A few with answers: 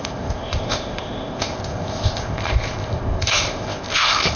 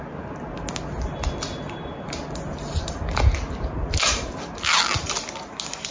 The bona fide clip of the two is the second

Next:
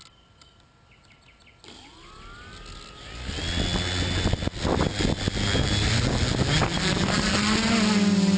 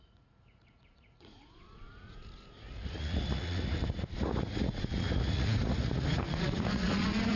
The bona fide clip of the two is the first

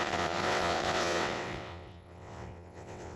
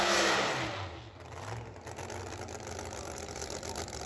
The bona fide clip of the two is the second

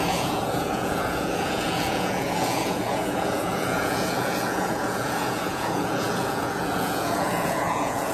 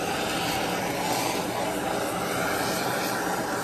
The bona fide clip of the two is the second